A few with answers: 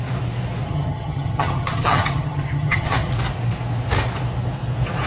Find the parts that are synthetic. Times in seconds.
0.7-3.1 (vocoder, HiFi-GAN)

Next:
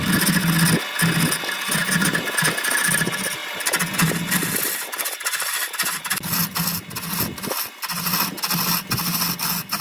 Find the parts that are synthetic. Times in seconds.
none

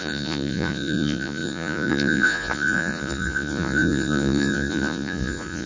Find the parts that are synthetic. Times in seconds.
0.0-5.7 (vocoder, Vocos)